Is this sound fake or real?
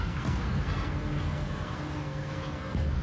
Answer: fake